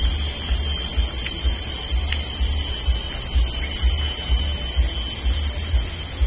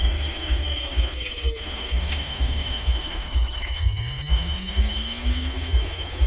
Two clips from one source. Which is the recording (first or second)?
first